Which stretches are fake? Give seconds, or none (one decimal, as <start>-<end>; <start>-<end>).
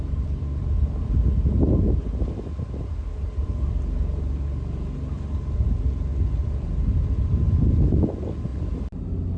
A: none